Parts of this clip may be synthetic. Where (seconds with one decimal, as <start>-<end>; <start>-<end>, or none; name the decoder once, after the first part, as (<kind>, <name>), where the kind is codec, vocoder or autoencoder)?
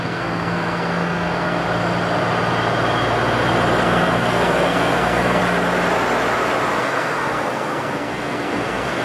0.0-1.6 (codec, SNAC); 3.8-5.4; 6.8-9.0